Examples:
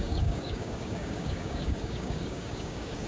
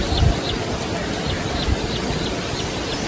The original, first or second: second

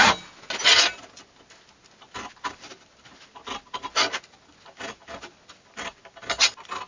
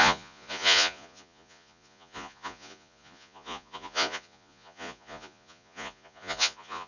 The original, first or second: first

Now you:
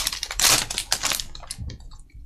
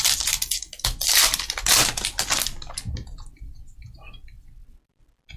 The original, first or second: second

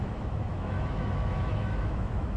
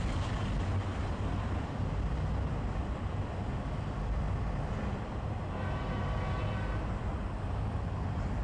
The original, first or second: second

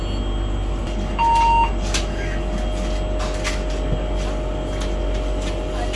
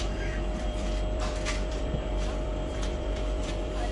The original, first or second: first